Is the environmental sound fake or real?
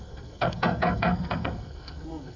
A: fake